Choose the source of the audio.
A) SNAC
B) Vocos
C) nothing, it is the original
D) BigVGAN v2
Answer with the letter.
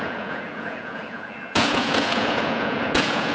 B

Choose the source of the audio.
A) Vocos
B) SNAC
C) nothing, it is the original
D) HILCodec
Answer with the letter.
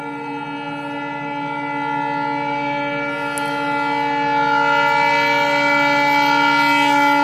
C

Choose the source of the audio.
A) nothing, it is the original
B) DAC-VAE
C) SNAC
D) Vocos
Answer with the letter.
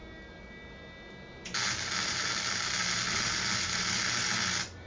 A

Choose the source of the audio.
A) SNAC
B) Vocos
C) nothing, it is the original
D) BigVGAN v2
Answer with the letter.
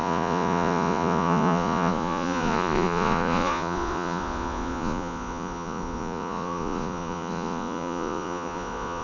B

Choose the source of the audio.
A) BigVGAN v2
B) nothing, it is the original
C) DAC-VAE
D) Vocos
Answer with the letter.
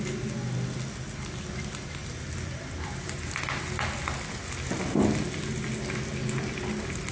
B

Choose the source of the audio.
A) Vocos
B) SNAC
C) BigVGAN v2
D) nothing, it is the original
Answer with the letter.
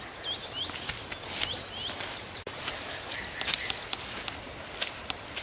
D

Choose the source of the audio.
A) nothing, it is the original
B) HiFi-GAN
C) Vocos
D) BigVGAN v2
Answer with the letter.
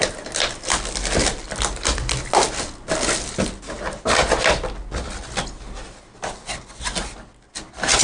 A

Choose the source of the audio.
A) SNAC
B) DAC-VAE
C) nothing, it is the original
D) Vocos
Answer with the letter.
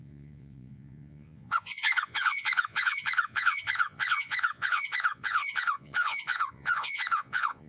D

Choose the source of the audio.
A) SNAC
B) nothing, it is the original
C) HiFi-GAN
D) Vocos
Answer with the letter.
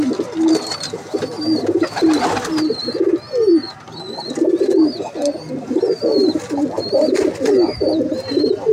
B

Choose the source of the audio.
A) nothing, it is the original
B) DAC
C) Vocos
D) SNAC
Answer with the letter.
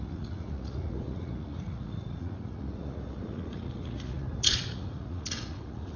C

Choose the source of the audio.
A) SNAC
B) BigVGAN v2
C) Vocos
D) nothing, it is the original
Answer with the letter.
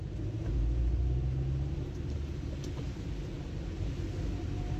D